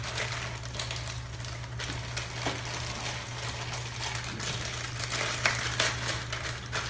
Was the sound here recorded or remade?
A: recorded